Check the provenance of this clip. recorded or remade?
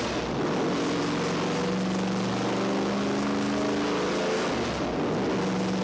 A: recorded